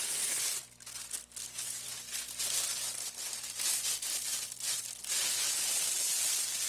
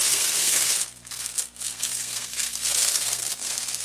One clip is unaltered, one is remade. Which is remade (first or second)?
second